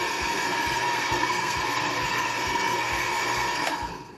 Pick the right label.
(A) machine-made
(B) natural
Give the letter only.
A